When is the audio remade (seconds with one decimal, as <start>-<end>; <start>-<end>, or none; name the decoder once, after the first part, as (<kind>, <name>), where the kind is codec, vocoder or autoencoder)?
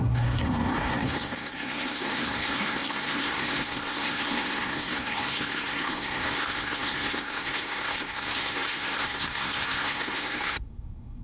0.0-11.2 (codec, SNAC)